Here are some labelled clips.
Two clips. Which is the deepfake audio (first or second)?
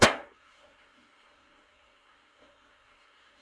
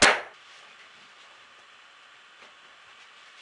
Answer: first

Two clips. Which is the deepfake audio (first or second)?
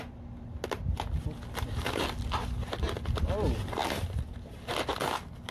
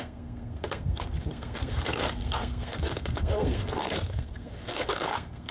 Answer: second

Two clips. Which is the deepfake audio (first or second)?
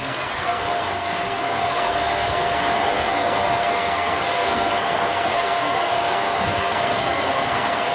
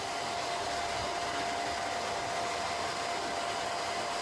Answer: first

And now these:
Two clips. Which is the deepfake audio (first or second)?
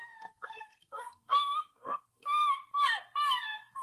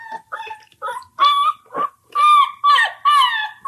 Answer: first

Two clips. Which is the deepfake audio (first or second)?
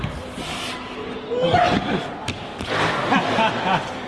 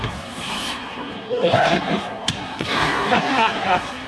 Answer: second